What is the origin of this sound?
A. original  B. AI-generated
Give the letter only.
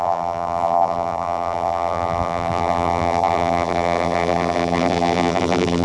B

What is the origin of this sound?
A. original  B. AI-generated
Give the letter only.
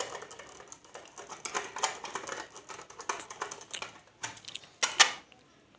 A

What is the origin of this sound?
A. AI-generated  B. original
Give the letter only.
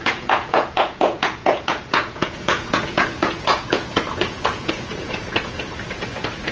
A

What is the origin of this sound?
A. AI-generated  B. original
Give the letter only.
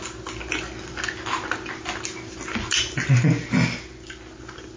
B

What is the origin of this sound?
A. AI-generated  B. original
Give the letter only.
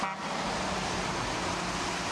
B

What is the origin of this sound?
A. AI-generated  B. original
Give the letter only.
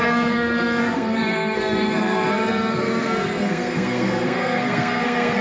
A